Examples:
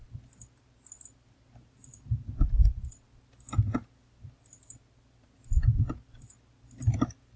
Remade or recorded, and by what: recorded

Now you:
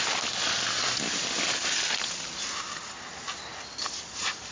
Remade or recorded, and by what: recorded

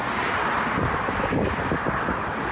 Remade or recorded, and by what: recorded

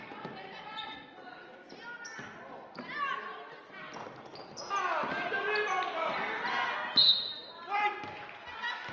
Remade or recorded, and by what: recorded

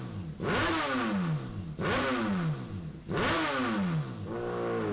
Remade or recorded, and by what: recorded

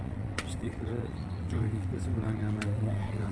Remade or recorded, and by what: remade, vocoder, WaveNeXt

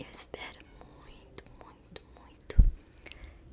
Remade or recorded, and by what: recorded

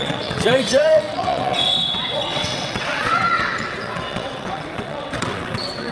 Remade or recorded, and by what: remade, vocoder, WaveNeXt